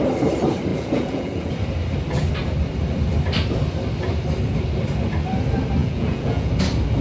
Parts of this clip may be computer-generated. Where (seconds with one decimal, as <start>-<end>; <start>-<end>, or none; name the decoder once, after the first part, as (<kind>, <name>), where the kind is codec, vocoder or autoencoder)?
0.7-1.5 (vocoder, Vocos); 5.8-6.5

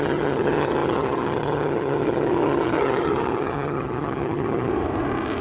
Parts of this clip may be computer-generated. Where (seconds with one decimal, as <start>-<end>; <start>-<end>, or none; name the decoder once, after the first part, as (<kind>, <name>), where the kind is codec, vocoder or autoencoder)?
0.0-4.7 (vocoder, HiFi-GAN)

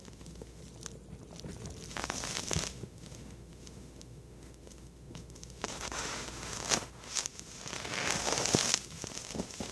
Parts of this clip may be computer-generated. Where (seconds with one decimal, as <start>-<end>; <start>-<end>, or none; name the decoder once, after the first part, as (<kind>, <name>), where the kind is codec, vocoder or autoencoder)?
0.0-0.6 (autoencoder, DAC-VAE); 1.9-9.7

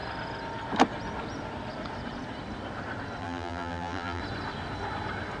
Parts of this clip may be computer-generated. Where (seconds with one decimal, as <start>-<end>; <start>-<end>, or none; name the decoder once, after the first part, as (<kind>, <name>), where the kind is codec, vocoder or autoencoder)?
3.2-4.2 (vocoder, BigVGAN v2)

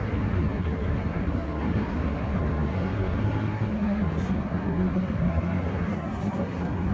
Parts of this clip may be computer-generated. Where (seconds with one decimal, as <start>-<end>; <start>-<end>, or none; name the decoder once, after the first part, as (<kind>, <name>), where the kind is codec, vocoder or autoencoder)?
0.0-6.9 (codec, SNAC)

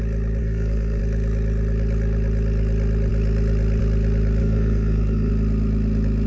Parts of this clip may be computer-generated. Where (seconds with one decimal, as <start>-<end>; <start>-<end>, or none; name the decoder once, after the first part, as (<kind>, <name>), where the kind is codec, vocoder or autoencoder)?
0.4-1.0 (codec, SNAC); 4.4-5.3